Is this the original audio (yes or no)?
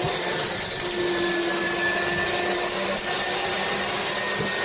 yes